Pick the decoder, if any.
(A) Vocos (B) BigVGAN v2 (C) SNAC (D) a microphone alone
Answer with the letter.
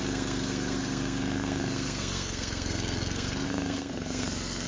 C